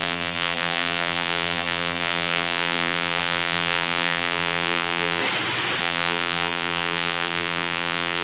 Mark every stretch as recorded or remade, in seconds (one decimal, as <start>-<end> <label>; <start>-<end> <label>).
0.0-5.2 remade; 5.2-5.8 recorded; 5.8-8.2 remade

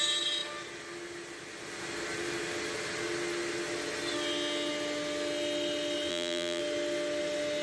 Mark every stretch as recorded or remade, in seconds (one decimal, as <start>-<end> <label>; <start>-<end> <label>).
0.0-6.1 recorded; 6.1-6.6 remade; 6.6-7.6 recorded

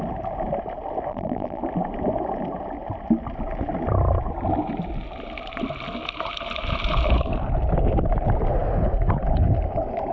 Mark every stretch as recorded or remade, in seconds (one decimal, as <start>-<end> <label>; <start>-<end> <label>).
0.0-1.1 recorded; 1.1-1.6 remade; 1.6-10.1 recorded

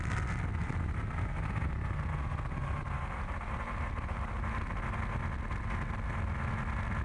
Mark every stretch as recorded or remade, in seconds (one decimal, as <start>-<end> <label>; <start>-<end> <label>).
0.0-0.6 recorded; 0.6-4.8 remade; 4.8-7.0 recorded